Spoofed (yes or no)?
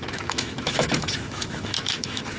yes